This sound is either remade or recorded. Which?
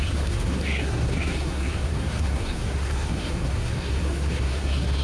remade